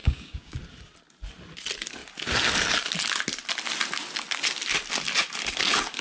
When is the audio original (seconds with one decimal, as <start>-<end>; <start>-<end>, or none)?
0.6-6.0